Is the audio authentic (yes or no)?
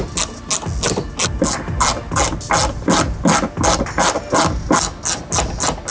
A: yes